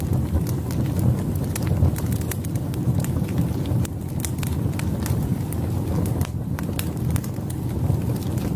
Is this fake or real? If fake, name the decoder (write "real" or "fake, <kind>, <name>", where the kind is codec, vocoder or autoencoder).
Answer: fake, vocoder, BigVGAN v2